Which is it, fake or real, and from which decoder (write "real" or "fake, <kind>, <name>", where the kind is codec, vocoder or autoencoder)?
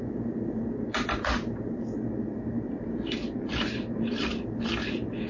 fake, vocoder, BigVGAN v2